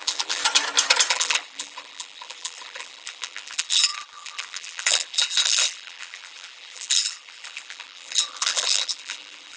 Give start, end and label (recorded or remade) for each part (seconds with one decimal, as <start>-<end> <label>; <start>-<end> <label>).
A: 0.0-0.4 remade; 0.4-1.1 recorded; 1.1-9.6 remade